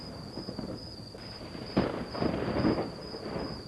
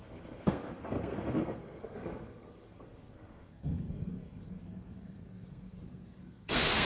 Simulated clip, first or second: second